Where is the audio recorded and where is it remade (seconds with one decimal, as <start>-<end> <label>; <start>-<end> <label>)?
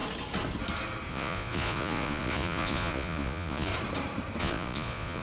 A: 0.0-1.1 recorded; 1.1-3.7 remade; 3.7-4.4 recorded; 4.4-5.2 remade